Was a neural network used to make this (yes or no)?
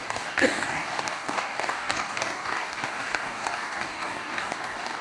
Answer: yes